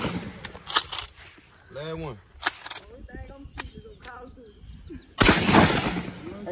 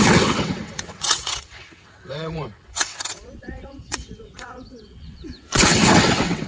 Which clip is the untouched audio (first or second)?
first